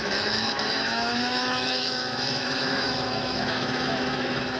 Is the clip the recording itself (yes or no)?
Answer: no